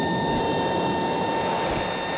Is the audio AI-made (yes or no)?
no